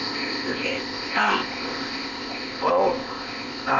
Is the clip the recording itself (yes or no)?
no